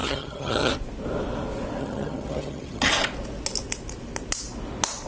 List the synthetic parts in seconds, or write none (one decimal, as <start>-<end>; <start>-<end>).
0.0-0.7; 1.8-2.9